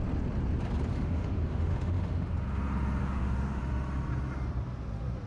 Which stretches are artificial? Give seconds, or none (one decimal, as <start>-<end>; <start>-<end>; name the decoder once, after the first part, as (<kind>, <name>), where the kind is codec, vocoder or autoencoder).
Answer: 0.9-2.3 (autoencoder, DAC-VAE); 3.0-3.6